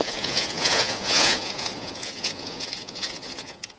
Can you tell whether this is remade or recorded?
remade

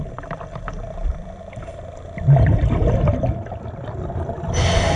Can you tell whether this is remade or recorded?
recorded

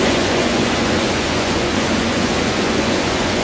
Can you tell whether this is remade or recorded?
remade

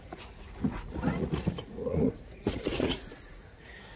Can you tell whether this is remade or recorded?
remade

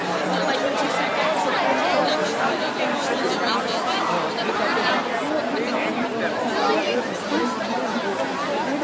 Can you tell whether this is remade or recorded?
recorded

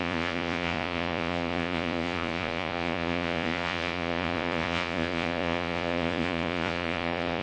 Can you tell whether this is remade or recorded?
remade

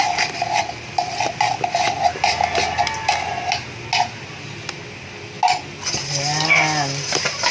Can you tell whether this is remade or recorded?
recorded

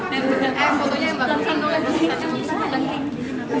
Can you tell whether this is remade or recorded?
recorded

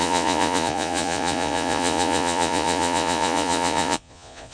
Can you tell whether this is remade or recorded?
remade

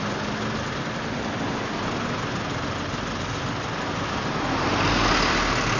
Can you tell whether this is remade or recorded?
recorded